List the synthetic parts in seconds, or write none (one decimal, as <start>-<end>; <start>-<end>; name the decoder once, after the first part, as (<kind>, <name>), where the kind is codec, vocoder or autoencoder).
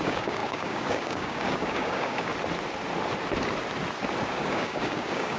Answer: 0.0-2.3 (codec, DAC); 4.2-5.4